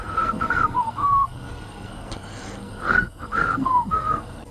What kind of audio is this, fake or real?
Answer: fake